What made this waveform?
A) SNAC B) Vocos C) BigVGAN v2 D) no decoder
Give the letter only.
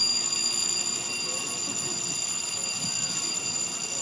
D